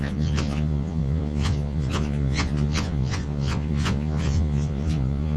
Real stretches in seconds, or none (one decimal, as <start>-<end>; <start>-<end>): none